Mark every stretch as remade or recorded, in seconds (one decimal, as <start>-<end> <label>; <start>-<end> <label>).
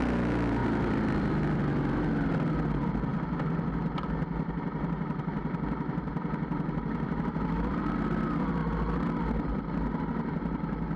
0.0-0.6 recorded; 0.6-1.6 remade; 1.6-3.1 recorded; 3.1-7.8 remade; 7.8-11.0 recorded